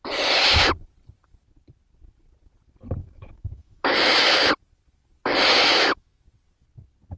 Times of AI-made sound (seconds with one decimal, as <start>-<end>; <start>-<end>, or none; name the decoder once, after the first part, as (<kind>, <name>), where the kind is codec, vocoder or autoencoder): 3.0-4.5 (autoencoder, DAC-VAE); 5.7-6.2